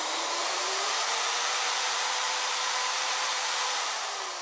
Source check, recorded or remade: remade